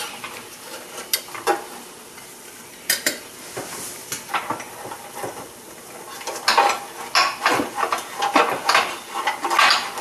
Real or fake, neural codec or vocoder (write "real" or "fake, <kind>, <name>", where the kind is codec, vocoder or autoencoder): real